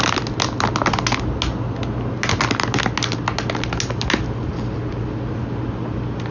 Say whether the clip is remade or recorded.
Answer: recorded